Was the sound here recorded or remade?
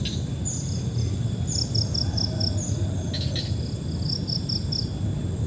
recorded